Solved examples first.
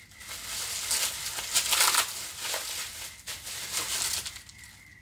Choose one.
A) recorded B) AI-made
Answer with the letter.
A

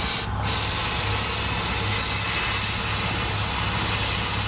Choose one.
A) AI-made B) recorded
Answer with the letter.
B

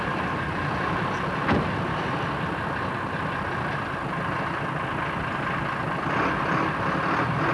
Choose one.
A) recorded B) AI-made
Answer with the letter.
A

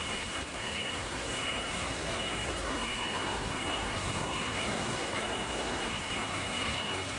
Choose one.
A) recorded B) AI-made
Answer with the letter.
B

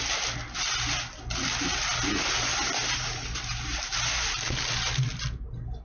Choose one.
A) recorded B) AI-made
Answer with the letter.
A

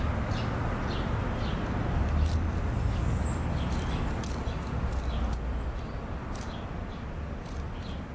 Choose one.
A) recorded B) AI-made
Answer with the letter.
A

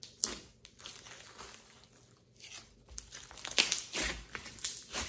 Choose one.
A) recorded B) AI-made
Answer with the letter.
A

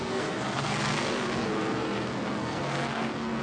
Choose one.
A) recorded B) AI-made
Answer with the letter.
B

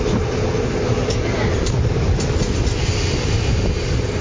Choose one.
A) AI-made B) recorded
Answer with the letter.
B